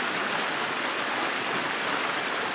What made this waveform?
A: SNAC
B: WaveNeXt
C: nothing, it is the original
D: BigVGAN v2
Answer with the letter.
D